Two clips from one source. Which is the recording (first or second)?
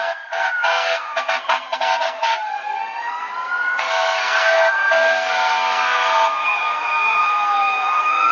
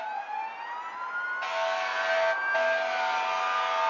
second